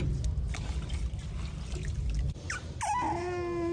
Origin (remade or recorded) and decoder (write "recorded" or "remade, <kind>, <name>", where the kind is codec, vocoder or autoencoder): recorded